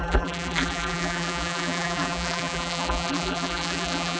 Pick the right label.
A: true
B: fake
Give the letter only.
B